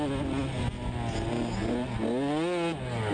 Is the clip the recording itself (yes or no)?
yes